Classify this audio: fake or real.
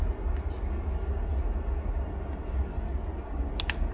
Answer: real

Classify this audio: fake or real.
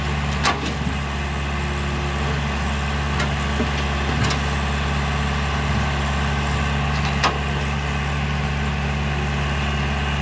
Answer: real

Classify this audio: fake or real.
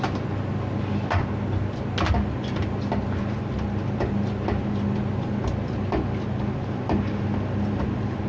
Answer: real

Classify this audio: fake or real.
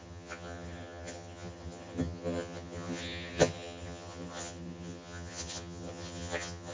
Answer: fake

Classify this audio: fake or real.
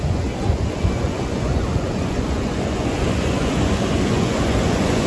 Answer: fake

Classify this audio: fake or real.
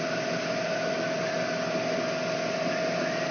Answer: real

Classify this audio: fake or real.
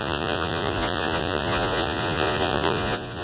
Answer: fake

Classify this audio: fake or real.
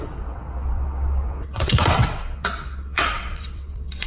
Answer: fake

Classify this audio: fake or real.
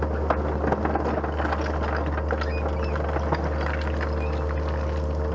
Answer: real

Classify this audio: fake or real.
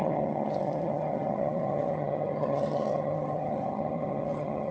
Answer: fake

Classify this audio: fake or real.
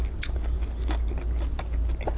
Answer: real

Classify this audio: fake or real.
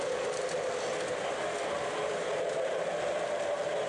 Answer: real